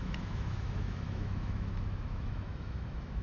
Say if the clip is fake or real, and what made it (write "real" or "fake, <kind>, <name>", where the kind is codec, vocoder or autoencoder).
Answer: fake, autoencoder, DAC-VAE